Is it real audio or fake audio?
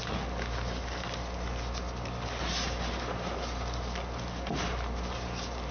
real